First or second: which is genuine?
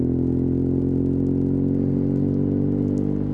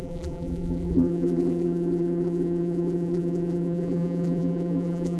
first